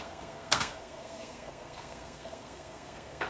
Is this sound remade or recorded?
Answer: remade